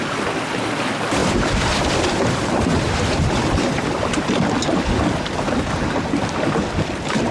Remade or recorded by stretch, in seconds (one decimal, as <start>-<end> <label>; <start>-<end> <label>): 0.0-1.2 recorded; 1.2-4.3 remade; 4.3-7.3 recorded

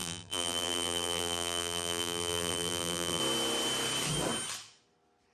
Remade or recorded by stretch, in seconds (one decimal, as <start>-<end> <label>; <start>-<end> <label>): 0.0-3.2 remade; 3.2-5.3 recorded